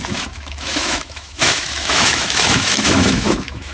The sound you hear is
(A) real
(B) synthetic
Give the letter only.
B